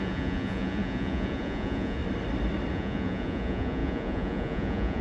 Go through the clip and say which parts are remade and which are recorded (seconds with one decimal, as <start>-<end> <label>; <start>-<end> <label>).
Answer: 0.0-2.0 remade; 2.0-2.7 recorded; 2.7-5.0 remade